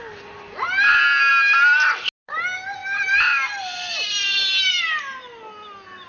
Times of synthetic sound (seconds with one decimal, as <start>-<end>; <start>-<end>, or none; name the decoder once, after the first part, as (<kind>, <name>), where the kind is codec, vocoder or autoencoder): none